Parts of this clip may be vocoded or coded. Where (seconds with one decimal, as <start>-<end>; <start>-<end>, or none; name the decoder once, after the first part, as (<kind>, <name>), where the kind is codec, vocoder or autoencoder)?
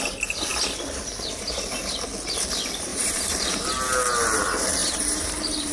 2.9-3.7 (vocoder, BigVGAN v2); 4.8-5.7